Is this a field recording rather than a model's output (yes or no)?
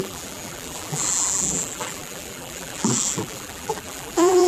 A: no